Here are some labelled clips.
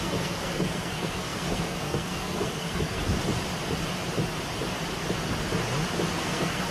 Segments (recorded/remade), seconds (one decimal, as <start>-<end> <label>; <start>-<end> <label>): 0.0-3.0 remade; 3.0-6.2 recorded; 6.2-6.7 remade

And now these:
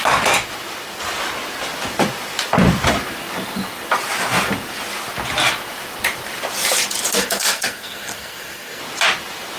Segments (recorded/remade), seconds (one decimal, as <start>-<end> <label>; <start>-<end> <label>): 0.0-7.2 recorded; 7.2-8.8 remade; 8.8-9.6 recorded

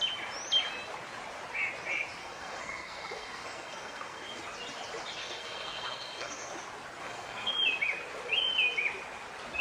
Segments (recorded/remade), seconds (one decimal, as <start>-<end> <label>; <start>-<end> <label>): 0.0-2.2 recorded; 2.2-4.4 remade; 4.4-5.2 recorded; 5.2-6.5 remade; 6.5-7.0 recorded; 7.0-7.5 remade; 7.5-9.6 recorded

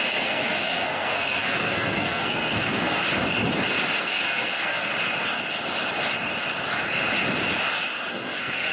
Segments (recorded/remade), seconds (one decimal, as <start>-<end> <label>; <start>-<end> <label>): 0.0-3.0 remade; 3.0-4.0 recorded; 4.0-4.9 remade; 4.9-8.1 recorded; 8.1-8.7 remade

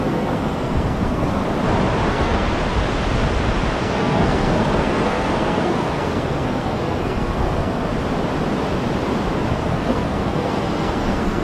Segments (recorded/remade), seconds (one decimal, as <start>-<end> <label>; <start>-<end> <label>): 0.0-1.4 remade; 1.4-2.1 recorded; 2.1-2.6 remade; 2.6-3.8 recorded; 3.8-7.9 remade; 7.9-9.5 recorded; 9.5-11.4 remade